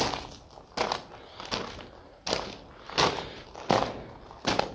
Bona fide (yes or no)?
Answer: yes